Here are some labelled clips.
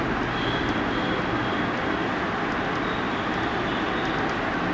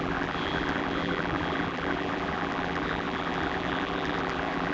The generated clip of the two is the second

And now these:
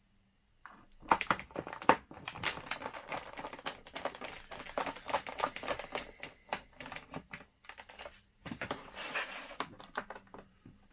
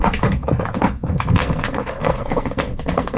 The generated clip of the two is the second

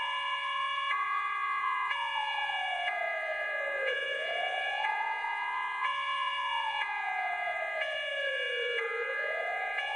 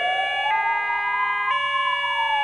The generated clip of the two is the first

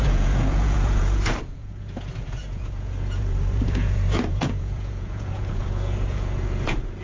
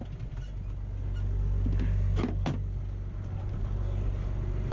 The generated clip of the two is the first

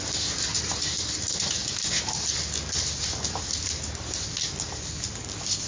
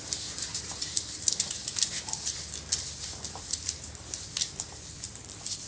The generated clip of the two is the second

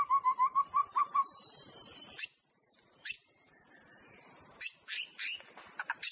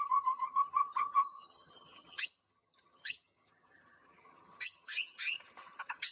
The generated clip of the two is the second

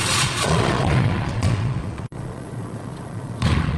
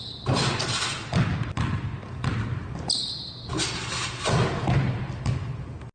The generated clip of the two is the first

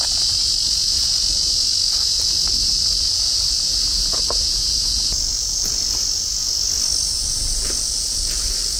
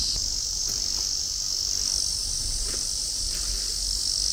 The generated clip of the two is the first